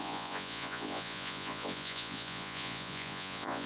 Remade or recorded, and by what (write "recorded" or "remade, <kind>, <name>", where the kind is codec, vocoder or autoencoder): remade, vocoder, Vocos